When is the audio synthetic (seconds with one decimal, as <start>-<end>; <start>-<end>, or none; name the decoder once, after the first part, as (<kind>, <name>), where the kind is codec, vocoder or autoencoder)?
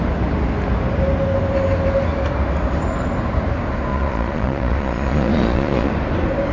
3.9-5.9 (vocoder, Vocos)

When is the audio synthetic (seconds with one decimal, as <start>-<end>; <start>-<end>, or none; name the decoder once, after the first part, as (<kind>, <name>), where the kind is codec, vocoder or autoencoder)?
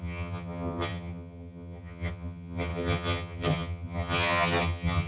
0.0-5.1 (vocoder, HiFi-GAN)